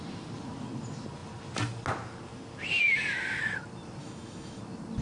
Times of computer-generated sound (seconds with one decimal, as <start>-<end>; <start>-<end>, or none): 4.0-4.6